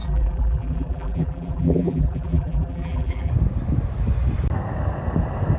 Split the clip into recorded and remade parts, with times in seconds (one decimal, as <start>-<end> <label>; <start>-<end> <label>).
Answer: 0.0-3.3 remade; 3.3-5.6 recorded